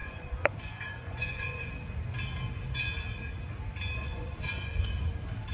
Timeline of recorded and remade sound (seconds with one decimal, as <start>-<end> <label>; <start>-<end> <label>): 0.0-1.7 remade; 1.7-4.0 recorded; 4.0-4.9 remade; 4.9-5.5 recorded